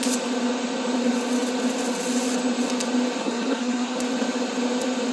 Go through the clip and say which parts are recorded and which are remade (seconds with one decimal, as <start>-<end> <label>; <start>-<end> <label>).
0.0-3.2 recorded; 3.2-4.0 remade; 4.0-5.1 recorded